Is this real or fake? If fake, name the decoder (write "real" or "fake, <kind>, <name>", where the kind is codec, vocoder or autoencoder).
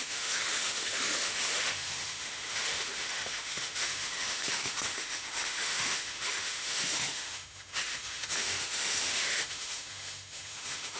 fake, autoencoder, DAC-VAE